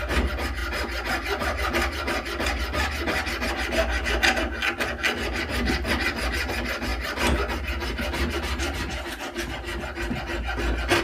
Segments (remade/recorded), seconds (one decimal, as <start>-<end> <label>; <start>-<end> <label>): 0.0-11.0 recorded